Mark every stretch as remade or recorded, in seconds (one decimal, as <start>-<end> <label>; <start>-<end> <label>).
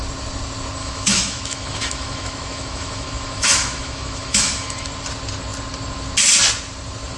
0.0-0.8 recorded; 0.8-4.9 remade; 4.9-7.2 recorded